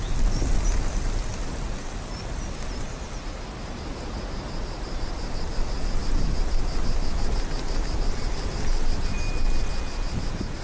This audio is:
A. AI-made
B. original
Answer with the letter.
B